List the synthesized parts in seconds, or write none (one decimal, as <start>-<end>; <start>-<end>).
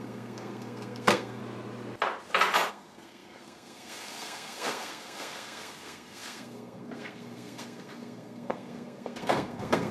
0.0-1.4; 2.7-9.9